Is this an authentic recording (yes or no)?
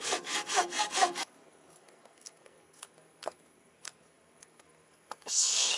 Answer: no